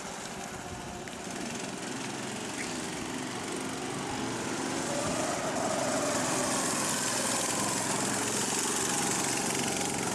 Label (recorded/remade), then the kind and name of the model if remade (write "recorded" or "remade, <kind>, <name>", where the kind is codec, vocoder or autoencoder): recorded